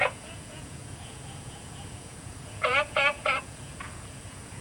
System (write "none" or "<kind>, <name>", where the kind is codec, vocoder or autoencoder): vocoder, Vocos